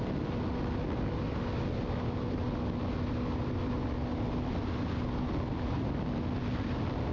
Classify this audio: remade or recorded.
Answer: recorded